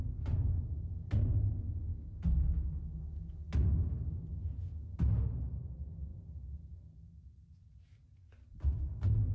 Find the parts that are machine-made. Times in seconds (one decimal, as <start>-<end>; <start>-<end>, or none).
none